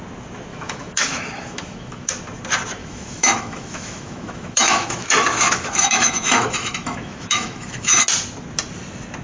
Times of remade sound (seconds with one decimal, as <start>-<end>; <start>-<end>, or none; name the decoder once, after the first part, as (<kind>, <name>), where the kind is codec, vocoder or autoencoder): 0.5-2.1 (autoencoder, DAC-VAE); 2.8-8.0